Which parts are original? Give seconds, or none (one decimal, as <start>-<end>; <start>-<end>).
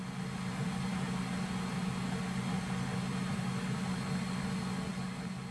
0.0-5.5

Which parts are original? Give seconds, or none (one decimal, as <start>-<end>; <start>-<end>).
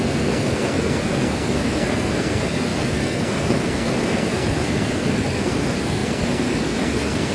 none